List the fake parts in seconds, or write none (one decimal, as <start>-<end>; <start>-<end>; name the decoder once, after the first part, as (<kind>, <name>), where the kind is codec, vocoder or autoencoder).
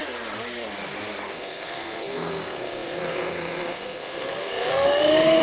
1.3-5.4 (codec, SNAC)